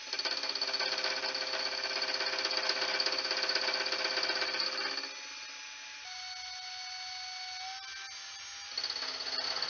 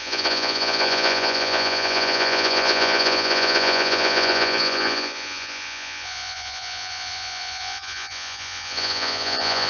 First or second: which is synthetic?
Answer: second